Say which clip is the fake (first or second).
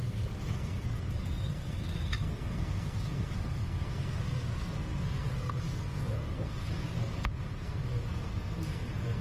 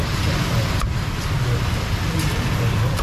first